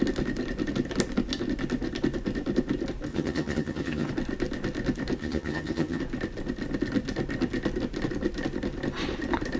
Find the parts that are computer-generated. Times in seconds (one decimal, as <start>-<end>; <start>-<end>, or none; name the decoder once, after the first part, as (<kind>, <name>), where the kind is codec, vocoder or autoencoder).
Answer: 3.1-4.1 (vocoder, HiFi-GAN); 5.2-6.0